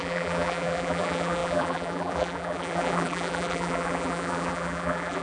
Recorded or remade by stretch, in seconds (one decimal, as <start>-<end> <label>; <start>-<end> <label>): 0.0-5.2 remade